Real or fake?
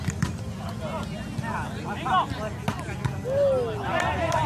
real